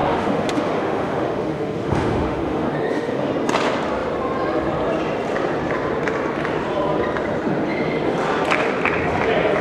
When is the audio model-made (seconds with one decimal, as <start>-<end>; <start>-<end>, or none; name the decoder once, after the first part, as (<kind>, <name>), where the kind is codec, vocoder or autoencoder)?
0.0-3.3 (autoencoder, DAC-VAE)